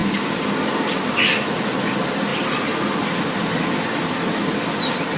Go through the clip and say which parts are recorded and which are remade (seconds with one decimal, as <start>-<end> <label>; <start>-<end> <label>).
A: 0.0-5.2 recorded